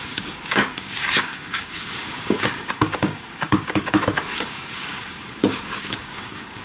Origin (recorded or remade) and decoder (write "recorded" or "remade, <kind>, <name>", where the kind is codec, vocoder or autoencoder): remade, codec, DAC